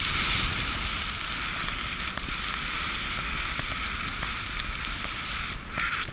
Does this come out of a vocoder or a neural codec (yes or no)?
no